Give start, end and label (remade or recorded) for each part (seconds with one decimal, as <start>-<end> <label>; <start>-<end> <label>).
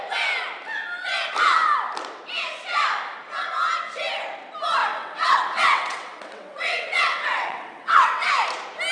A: 0.0-4.8 recorded; 4.8-8.3 remade; 8.3-8.9 recorded